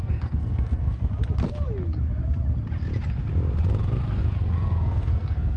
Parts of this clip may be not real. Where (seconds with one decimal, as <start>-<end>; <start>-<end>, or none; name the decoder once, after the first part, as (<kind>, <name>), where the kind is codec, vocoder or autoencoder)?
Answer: 0.0-1.1 (codec, SNAC); 4.5-5.6